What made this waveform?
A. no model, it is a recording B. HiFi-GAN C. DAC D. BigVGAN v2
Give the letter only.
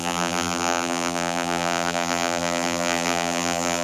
D